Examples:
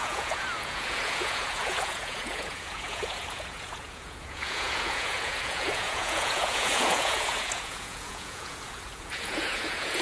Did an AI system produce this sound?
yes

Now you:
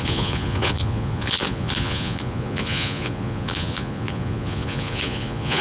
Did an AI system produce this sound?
yes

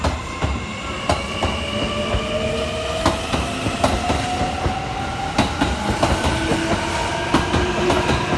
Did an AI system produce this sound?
no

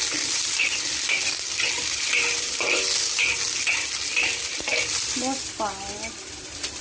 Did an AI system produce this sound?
no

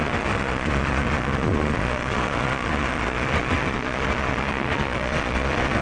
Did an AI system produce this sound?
yes